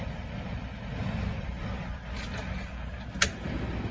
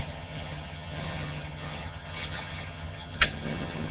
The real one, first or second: first